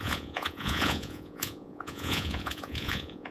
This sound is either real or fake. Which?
fake